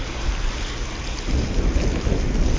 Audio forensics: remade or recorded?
recorded